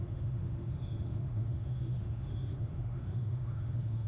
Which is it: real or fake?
fake